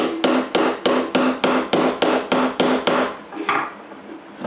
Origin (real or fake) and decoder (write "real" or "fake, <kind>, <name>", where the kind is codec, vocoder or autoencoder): real